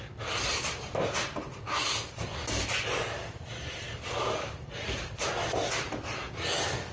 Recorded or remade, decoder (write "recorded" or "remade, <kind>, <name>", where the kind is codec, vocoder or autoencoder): recorded